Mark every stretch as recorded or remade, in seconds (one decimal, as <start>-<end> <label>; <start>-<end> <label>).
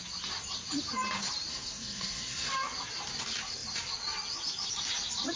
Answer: 0.0-1.5 recorded; 1.5-2.5 remade; 2.5-5.4 recorded